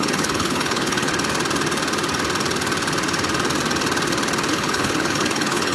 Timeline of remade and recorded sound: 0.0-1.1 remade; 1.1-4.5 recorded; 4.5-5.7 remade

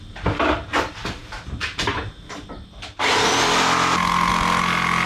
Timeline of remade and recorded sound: 0.0-5.1 recorded